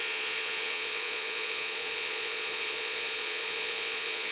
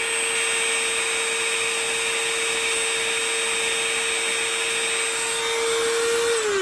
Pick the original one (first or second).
second